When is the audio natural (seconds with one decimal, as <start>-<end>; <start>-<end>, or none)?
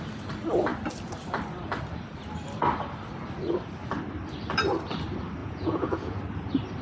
0.0-5.4; 6.2-6.8